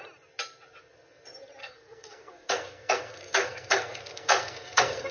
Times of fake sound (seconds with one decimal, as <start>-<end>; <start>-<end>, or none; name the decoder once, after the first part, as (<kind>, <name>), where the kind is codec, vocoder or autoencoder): 1.6-5.1 (codec, SNAC)